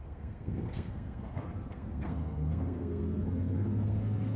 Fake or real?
fake